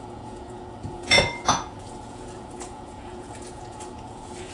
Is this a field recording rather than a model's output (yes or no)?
no